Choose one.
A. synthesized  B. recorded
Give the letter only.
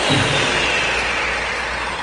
B